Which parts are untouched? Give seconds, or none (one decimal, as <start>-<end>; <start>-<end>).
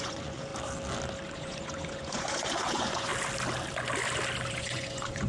0.5-1.3; 3.1-4.5